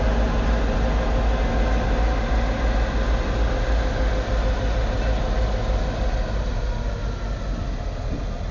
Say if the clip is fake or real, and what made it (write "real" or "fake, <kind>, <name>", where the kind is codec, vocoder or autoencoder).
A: real